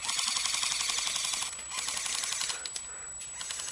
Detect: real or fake real